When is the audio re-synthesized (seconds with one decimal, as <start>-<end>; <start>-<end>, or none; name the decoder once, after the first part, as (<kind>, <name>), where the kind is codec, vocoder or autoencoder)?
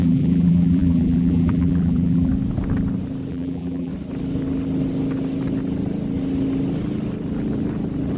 0.0-2.3 (vocoder, BigVGAN v2); 3.3-3.9